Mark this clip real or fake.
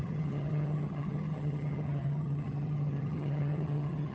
fake